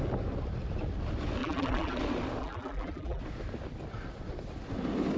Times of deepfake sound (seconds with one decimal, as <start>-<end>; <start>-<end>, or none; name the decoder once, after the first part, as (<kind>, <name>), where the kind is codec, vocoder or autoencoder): 1.4-2.0 (vocoder, BigVGAN v2); 2.4-3.2